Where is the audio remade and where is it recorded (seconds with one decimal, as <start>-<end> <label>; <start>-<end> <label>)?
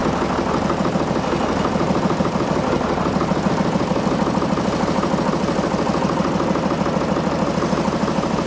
0.0-8.5 recorded